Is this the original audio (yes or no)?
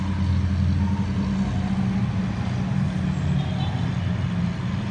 yes